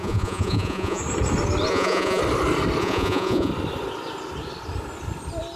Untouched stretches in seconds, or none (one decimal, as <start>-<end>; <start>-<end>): 1.0-1.7; 2.2-2.8; 3.5-5.6